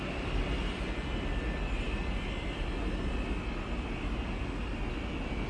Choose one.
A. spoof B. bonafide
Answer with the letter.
B